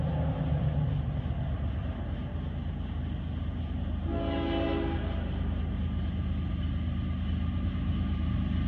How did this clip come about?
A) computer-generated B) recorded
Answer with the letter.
B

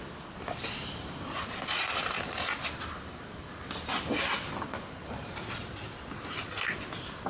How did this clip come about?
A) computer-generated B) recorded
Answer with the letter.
B